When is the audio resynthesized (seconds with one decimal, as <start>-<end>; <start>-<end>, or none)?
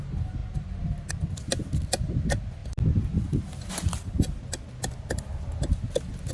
none